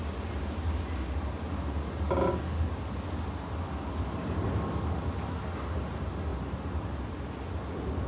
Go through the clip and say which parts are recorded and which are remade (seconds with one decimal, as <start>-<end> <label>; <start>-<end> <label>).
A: 0.0-8.1 recorded